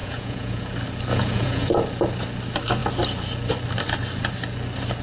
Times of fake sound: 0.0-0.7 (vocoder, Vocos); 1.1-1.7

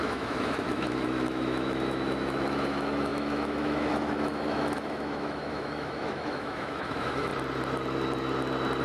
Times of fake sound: 0.0-7.3 (autoencoder, DAC-VAE)

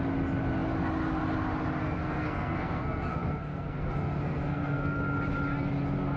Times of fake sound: 1.8-5.0 (codec, SNAC)

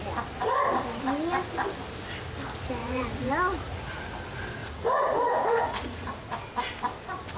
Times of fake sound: 2.8-3.3 (vocoder, Vocos); 4.6-6.3

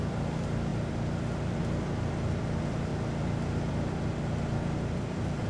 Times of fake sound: 0.0-0.7 (vocoder, BigVGAN v2); 1.6-2.9; 3.7-5.5